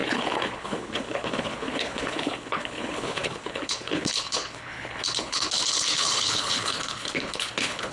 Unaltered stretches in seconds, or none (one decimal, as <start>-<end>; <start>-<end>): none